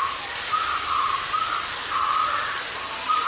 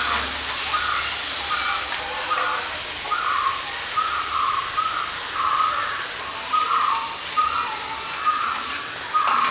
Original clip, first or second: second